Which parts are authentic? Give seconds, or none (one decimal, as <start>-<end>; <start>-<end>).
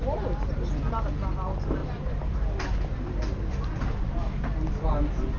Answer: 0.8-1.8; 4.3-5.4